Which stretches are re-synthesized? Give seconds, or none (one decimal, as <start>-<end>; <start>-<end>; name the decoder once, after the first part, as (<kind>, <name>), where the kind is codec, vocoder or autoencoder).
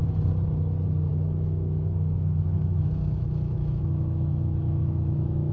1.1-5.5 (autoencoder, DAC-VAE)